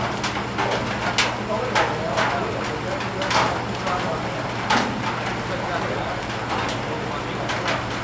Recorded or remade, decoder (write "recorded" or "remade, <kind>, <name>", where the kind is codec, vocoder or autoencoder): recorded